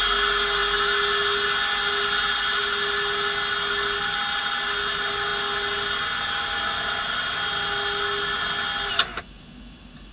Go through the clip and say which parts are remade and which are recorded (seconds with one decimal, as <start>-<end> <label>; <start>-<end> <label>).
0.0-10.1 recorded